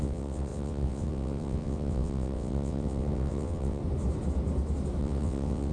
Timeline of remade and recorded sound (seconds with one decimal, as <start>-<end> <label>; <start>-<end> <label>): 0.0-3.8 remade; 3.8-5.0 recorded; 5.0-5.7 remade

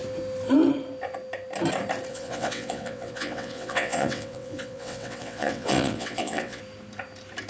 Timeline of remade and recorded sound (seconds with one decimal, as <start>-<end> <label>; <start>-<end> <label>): 0.0-2.1 recorded; 2.1-6.6 remade; 6.6-7.5 recorded

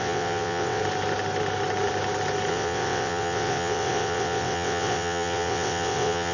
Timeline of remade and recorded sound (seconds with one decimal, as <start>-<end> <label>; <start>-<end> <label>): 0.0-0.8 remade; 0.8-2.5 recorded; 2.5-6.3 remade